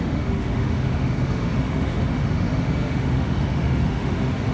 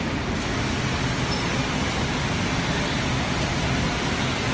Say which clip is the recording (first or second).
second